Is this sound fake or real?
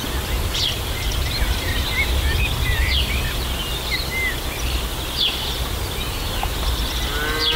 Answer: real